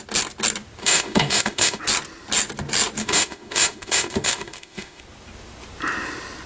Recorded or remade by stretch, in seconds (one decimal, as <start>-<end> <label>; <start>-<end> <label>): 0.0-0.8 recorded; 0.8-1.8 remade; 1.8-3.0 recorded; 3.0-5.0 remade; 5.0-6.5 recorded